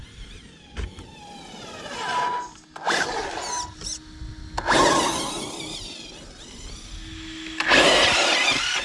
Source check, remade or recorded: recorded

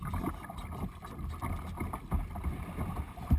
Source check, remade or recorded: recorded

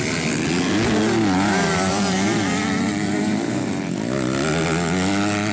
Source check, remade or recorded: recorded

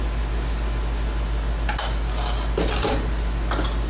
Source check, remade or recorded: recorded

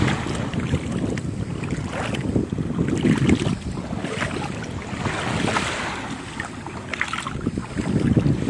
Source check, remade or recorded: recorded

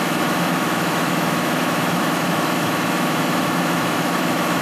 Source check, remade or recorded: remade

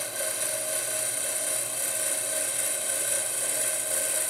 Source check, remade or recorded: recorded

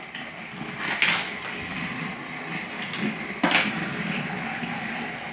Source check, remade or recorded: recorded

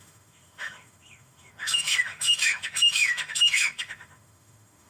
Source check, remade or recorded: remade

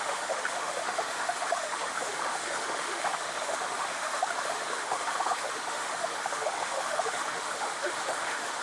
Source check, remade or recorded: remade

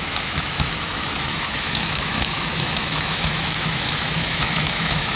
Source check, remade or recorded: remade